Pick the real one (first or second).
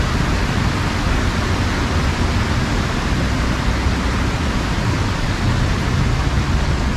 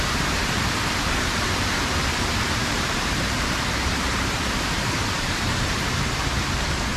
first